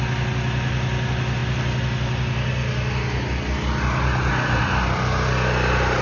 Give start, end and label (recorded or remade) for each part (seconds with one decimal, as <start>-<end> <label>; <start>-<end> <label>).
0.0-6.0 recorded